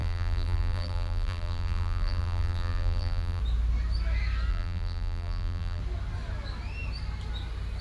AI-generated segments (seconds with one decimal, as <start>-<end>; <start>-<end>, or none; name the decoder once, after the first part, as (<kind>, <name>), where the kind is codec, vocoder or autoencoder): 0.0-3.4 (vocoder, BigVGAN v2); 4.5-5.8